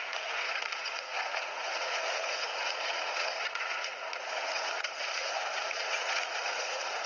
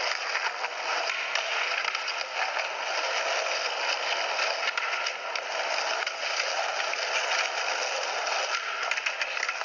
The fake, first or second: first